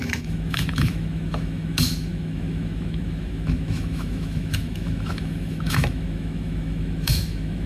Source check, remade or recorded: remade